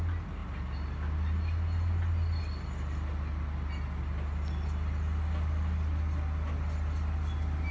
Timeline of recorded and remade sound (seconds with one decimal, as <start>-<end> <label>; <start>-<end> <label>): 0.0-7.7 recorded